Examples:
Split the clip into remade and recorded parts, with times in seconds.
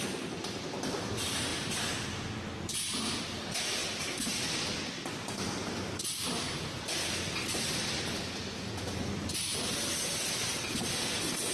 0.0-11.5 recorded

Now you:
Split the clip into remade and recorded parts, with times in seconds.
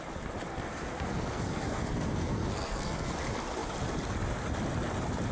0.0-0.5 recorded; 0.5-3.1 remade; 3.1-5.3 recorded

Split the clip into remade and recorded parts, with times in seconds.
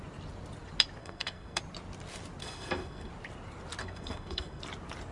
0.0-1.0 recorded; 1.0-1.6 remade; 1.6-2.4 recorded; 2.4-3.1 remade; 3.1-3.8 recorded; 3.8-4.6 remade; 4.6-5.1 recorded